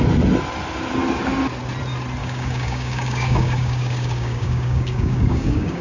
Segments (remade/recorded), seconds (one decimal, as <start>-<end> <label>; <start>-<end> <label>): 0.0-2.2 recorded; 2.2-5.8 remade